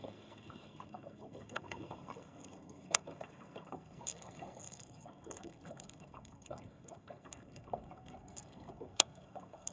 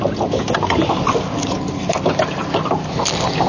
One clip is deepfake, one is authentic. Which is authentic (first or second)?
second